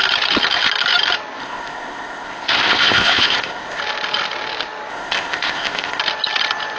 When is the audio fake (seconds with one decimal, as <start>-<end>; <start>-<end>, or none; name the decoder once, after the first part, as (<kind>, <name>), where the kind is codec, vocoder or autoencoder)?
1.4-3.8 (codec, ZipCodec); 4.9-6.0